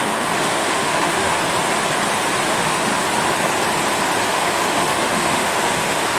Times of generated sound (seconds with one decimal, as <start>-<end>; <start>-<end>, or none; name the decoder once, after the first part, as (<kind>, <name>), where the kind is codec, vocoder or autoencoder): 0.0-1.4 (autoencoder, DAC-VAE); 2.5-2.9; 4.3-6.2